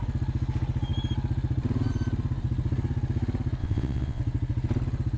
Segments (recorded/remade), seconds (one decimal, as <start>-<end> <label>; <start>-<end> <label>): 0.0-3.6 recorded; 3.6-4.2 remade; 4.2-5.2 recorded